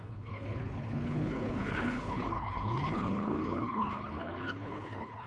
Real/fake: fake